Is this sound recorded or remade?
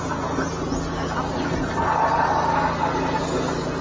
recorded